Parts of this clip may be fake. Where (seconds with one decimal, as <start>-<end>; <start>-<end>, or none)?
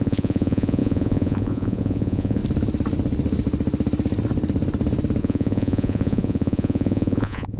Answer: 0.0-2.4; 5.2-7.6